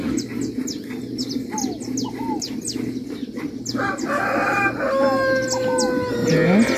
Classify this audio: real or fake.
real